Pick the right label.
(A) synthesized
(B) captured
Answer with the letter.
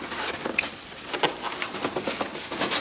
B